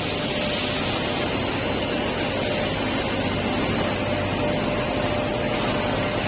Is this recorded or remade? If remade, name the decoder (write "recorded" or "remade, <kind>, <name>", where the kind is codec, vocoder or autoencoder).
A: recorded